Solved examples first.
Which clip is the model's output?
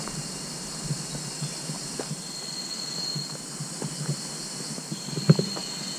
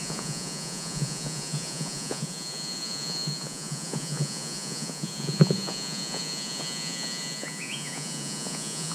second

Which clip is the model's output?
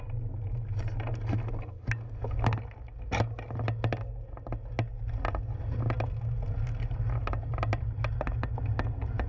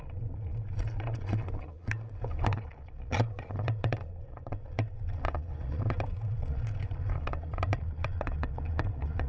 second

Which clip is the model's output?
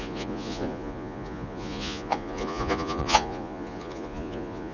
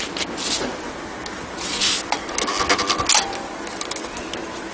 first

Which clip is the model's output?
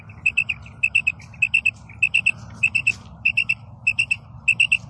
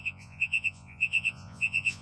second